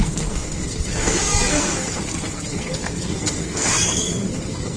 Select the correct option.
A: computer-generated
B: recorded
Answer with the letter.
A